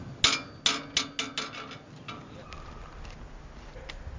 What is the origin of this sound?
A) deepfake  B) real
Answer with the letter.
B